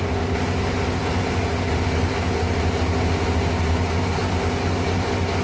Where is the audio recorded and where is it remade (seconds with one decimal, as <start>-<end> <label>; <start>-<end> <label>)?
0.0-5.4 recorded